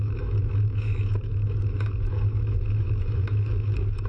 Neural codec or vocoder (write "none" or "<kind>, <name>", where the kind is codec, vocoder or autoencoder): autoencoder, DAC-VAE